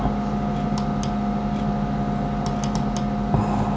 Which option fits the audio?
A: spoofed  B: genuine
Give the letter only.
B